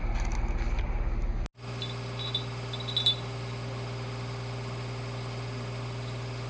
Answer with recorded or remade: recorded